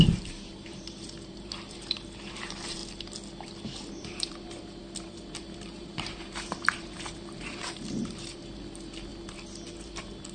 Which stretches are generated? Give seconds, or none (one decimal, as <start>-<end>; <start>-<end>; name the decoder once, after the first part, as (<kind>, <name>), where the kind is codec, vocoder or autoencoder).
0.0-2.8 (vocoder, BigVGAN v2); 3.9-9.1; 9.7-10.3